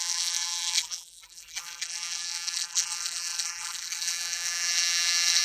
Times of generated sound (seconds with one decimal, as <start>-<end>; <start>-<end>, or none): 0.0-5.4